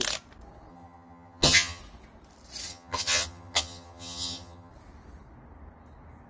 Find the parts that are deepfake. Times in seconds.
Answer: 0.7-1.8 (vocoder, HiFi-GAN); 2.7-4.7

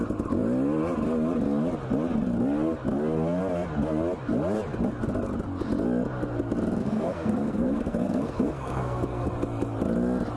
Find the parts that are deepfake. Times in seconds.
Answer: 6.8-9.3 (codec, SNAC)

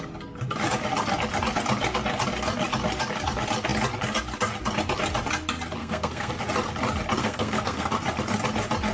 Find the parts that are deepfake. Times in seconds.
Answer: 5.8-6.3 (codec, SNAC); 7.2-7.9

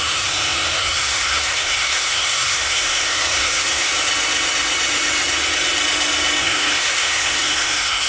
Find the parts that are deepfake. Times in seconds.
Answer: 0.0-3.9 (codec, SNAC); 6.4-8.1